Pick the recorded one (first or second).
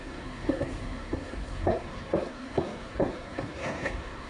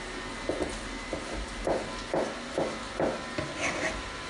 second